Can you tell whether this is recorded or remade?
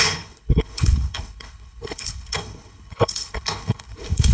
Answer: remade